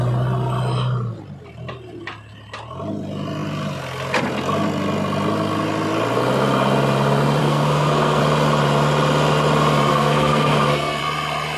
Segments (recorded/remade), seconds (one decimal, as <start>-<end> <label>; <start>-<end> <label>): 0.0-7.4 recorded; 7.4-8.2 remade; 8.2-9.9 recorded; 9.9-11.0 remade; 11.0-11.6 recorded